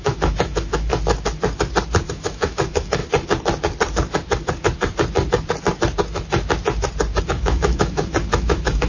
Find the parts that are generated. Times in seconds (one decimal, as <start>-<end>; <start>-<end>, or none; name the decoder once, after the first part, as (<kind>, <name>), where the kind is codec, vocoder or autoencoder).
0.0-0.9 (autoencoder, DAC-VAE); 2.1-3.0; 7.2-8.9